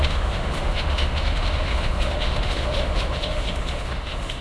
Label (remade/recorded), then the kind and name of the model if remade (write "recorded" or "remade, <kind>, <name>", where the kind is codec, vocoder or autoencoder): remade, autoencoder, DAC-VAE